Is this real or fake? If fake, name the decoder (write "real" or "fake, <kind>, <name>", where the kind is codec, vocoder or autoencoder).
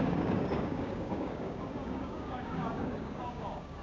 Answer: fake, codec, DAC